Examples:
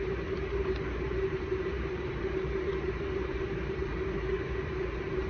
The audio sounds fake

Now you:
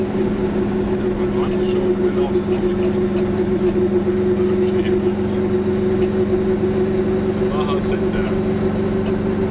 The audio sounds real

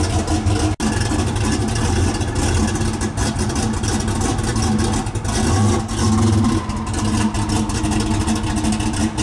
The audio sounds real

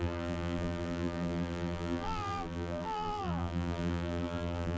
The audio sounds fake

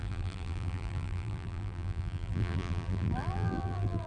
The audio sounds fake